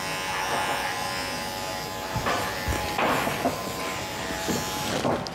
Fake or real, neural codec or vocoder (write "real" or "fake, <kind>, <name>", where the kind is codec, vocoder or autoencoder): real